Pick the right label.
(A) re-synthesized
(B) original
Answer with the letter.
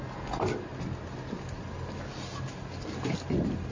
B